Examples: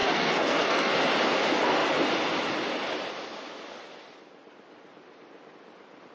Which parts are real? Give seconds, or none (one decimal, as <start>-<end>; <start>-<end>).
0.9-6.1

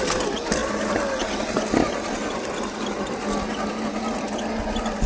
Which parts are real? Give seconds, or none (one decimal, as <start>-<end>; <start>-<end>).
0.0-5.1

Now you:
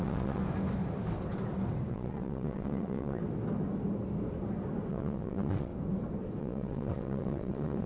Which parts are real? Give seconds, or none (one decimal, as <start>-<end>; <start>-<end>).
0.4-1.9; 3.2-4.9; 5.7-6.4

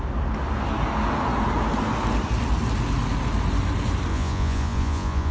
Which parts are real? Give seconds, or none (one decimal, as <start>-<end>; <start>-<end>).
0.0-4.1

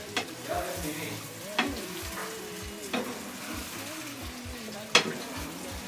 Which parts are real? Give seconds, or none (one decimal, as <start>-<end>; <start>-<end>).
0.0-5.9

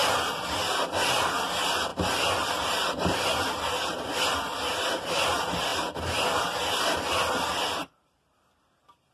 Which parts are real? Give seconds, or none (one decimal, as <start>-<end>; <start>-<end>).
0.0-7.8; 8.3-9.1

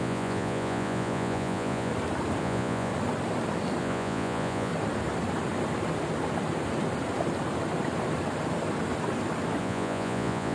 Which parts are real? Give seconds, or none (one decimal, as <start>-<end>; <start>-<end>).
1.9-2.4; 2.9-3.8; 4.7-9.6